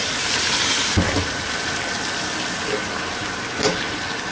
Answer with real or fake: real